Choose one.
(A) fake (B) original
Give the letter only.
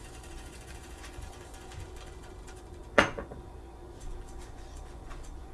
A